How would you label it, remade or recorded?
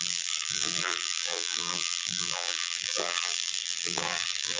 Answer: remade